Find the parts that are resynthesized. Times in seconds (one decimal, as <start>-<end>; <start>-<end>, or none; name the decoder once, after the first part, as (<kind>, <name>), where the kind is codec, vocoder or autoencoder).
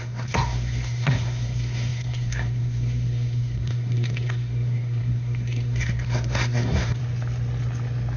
0.0-7.0 (codec, SNAC)